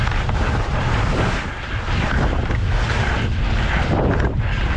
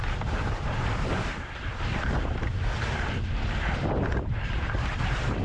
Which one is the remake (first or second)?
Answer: second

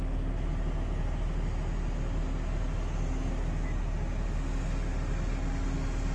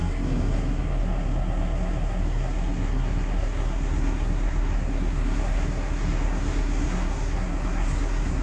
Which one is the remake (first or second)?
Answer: second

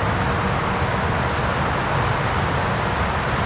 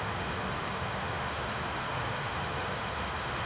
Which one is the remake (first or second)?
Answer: second